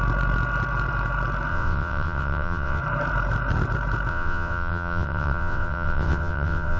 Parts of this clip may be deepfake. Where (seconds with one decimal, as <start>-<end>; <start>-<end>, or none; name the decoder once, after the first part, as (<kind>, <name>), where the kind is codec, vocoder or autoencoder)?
1.5-2.8 (vocoder, WaveNeXt); 4.1-6.8